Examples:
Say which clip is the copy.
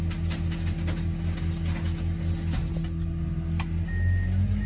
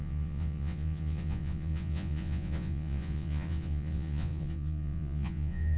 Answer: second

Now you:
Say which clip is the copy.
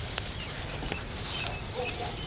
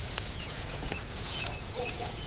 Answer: second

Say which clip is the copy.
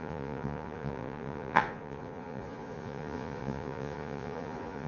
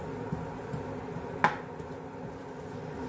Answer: first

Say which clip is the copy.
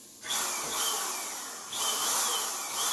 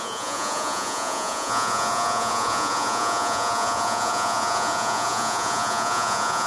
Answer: second